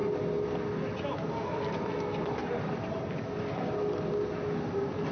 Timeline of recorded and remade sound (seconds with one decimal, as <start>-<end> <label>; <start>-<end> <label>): 0.0-5.1 recorded